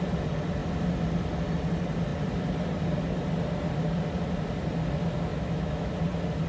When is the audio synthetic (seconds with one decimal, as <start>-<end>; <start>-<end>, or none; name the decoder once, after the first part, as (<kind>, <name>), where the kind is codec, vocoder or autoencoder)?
5.3-5.9 (autoencoder, DAC-VAE)

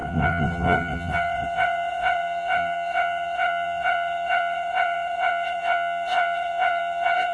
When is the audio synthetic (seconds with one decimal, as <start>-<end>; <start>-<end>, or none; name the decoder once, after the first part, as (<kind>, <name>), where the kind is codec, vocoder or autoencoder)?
0.0-7.3 (vocoder, WaveNeXt)

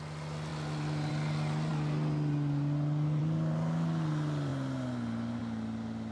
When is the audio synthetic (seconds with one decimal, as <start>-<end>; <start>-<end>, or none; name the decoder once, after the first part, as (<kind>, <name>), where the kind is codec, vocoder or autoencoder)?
none

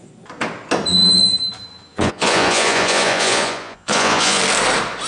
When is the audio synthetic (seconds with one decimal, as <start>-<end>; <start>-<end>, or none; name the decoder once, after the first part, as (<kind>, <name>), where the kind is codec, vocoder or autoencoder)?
1.9-4.4 (vocoder, Vocos)